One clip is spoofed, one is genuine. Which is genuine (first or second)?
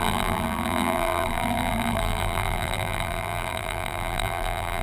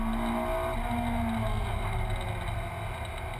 second